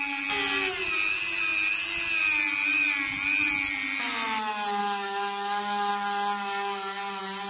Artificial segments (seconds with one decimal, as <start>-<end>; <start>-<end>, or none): 4.8-5.9